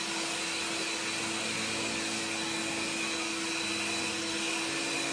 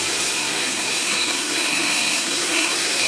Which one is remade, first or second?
second